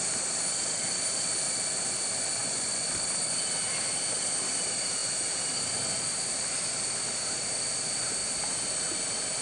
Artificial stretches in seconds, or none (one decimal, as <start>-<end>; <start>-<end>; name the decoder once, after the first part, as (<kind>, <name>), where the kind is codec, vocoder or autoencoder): 2.4-2.9 (vocoder, Vocos)